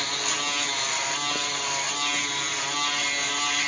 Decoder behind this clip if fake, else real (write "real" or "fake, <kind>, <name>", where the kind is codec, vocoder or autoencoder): real